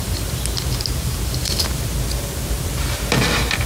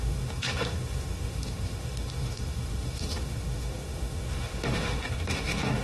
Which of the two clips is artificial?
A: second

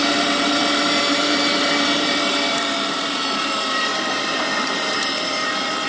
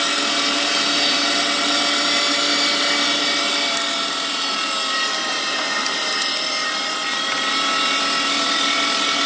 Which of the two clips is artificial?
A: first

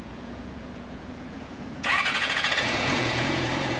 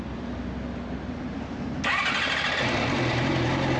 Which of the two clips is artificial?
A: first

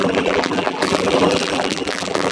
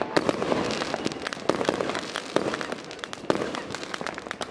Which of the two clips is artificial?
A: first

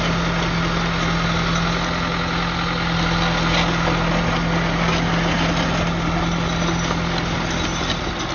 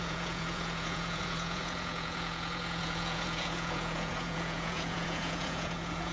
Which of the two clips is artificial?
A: second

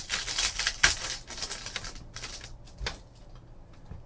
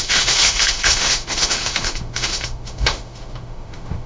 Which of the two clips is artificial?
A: second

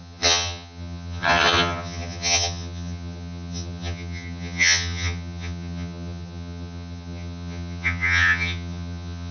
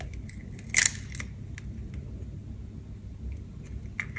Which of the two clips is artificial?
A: first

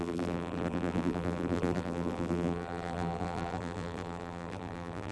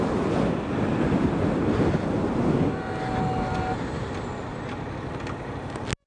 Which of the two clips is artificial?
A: first